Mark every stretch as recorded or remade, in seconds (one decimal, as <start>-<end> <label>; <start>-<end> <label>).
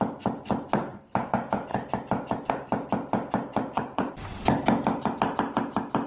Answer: 0.0-3.5 recorded; 3.5-4.1 remade; 4.1-6.1 recorded